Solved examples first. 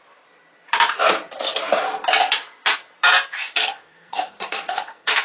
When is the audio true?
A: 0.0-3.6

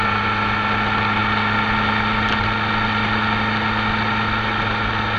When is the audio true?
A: 0.0-5.2

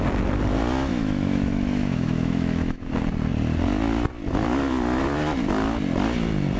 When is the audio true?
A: 0.0-0.9; 2.9-6.6

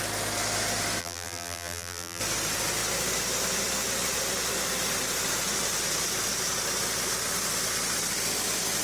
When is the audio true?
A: 0.0-1.0; 2.2-8.8

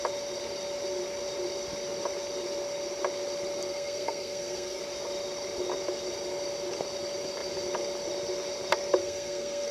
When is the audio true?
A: 0.0-3.7; 4.8-9.0

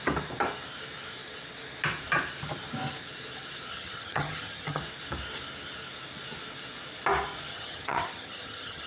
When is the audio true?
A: 0.0-3.7; 4.8-7.5

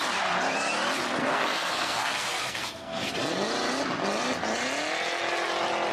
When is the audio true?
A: 0.0-1.2; 3.1-5.9

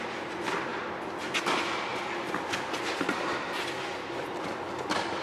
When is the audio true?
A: 0.0-5.2